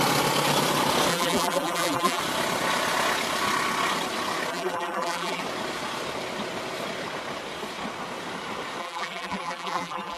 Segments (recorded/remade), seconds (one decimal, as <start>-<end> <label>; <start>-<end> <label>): 0.0-1.1 recorded; 1.1-2.2 remade; 2.2-4.5 recorded; 4.5-5.4 remade; 5.4-8.8 recorded; 8.8-10.2 remade